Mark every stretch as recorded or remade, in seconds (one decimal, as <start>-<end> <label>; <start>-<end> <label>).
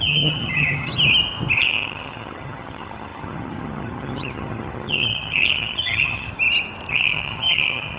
0.0-0.9 remade; 0.9-1.6 recorded; 1.6-6.3 remade; 6.3-6.9 recorded; 6.9-8.0 remade